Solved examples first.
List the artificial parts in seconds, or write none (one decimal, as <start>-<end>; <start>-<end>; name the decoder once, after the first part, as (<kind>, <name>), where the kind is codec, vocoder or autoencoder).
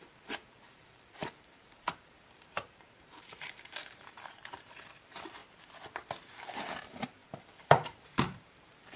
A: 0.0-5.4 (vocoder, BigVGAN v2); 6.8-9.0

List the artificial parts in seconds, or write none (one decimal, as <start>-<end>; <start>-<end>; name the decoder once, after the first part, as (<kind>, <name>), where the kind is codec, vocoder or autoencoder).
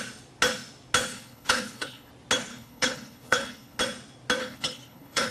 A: 1.1-2.1 (codec, HILCodec); 2.5-3.8; 4.4-5.3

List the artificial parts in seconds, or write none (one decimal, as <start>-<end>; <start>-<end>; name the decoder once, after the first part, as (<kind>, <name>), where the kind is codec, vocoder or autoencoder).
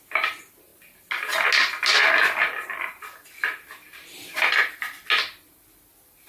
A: none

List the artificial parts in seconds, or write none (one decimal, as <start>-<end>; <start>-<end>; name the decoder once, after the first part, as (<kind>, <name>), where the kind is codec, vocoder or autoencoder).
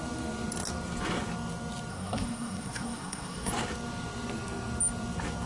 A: 1.9-3.5 (codec, SNAC)